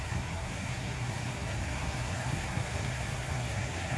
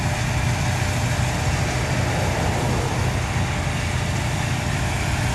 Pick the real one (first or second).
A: second